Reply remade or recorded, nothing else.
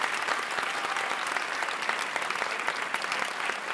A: recorded